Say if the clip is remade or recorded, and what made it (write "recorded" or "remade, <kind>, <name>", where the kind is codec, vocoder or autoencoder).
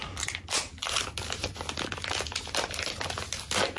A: recorded